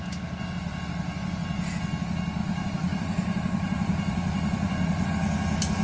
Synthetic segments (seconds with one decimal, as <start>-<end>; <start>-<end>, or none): 2.4-5.1